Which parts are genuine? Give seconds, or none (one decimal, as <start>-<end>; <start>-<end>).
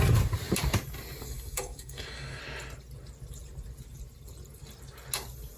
0.0-1.2; 2.4-5.6